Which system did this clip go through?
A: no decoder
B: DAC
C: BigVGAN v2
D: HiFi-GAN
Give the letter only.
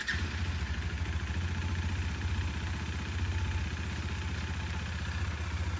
A